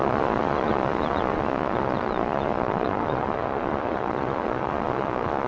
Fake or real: fake